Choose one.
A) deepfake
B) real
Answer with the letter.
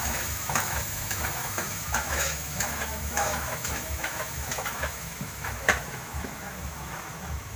A